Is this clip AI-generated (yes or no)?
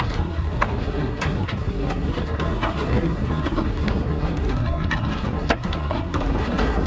yes